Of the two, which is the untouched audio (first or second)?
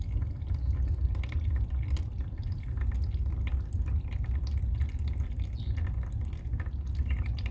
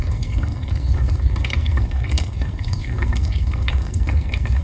first